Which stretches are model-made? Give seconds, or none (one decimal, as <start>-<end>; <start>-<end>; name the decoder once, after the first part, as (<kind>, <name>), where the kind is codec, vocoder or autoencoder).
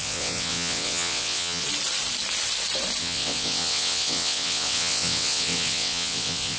0.0-1.6 (vocoder, WaveNeXt); 3.0-6.6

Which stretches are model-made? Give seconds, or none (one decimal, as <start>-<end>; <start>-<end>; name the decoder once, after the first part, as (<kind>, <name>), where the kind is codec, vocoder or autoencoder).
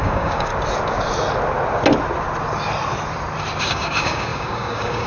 0.0-0.5 (codec, DAC); 3.6-5.1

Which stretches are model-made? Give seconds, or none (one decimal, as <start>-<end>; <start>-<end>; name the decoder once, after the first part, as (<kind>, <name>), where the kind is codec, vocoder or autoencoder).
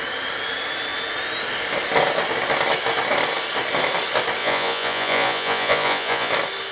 4.4-6.3 (vocoder, Vocos)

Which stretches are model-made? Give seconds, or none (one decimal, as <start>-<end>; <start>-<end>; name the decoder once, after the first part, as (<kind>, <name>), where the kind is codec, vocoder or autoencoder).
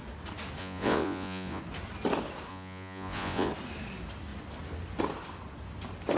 0.6-1.6 (vocoder, Vocos); 2.5-3.5